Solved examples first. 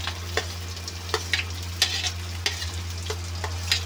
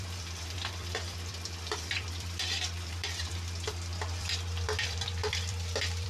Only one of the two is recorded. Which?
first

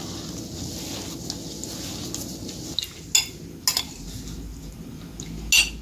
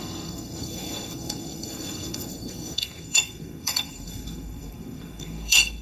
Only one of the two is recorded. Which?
first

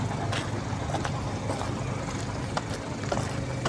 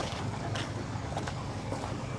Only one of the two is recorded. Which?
first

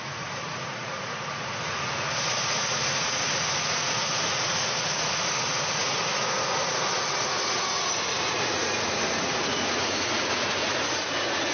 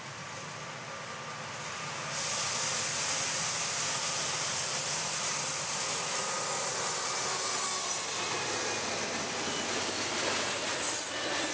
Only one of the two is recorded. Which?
second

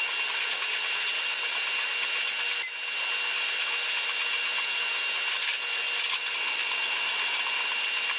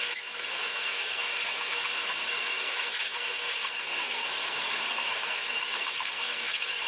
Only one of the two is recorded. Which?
first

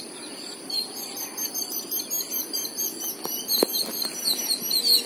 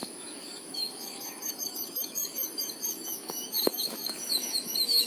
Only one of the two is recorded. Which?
first